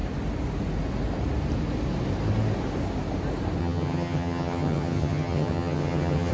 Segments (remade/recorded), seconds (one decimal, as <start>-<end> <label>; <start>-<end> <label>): 0.0-3.6 recorded; 3.6-6.3 remade